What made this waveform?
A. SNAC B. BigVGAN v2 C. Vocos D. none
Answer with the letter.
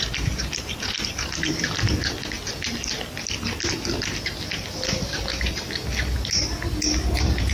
D